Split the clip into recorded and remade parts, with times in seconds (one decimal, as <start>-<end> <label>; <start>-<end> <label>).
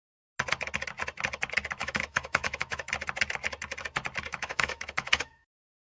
0.0-1.8 recorded; 1.8-2.9 remade; 2.9-4.3 recorded; 4.3-5.8 remade